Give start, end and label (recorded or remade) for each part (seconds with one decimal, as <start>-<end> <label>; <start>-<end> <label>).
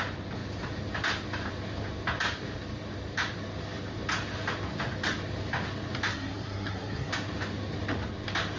0.0-6.1 recorded; 6.1-7.1 remade; 7.1-8.6 recorded